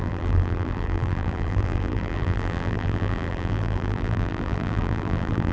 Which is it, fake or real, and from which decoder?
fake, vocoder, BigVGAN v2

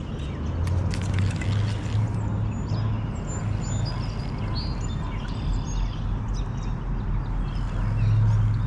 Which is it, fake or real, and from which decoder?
real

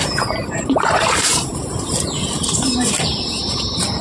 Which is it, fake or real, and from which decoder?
fake, vocoder, BigVGAN v2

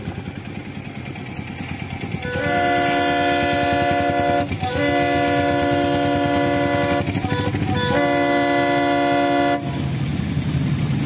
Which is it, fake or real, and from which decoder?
real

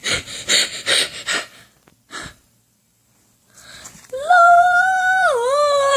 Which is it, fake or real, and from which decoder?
fake, vocoder, BigVGAN v2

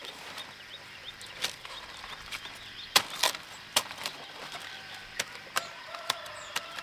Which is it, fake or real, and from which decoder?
fake, vocoder, BigVGAN v2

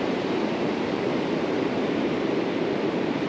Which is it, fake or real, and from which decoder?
fake, vocoder, BigVGAN v2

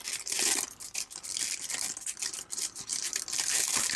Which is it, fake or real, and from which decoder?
real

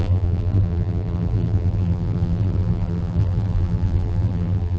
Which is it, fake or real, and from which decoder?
fake, vocoder, BigVGAN v2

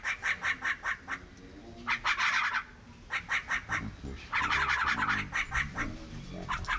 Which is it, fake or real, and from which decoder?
real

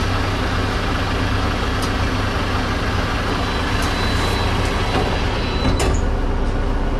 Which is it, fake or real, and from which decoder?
real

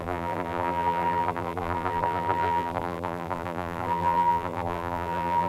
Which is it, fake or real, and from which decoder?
fake, vocoder, BigVGAN v2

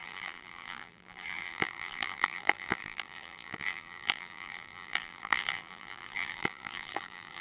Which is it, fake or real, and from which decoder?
fake, vocoder, BigVGAN v2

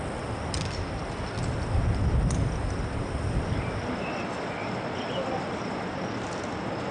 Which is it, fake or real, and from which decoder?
real